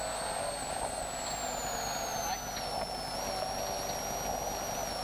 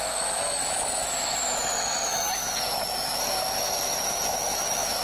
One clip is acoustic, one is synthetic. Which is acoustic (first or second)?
first